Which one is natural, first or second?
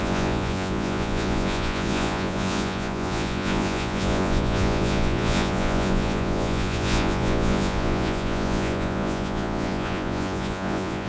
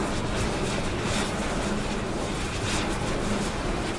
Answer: second